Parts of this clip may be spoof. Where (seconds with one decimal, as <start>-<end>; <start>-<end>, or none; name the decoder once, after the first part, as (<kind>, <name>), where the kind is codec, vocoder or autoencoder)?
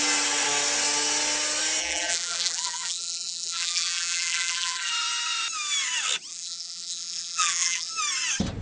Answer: 1.8-4.9 (vocoder, BigVGAN v2); 6.3-7.9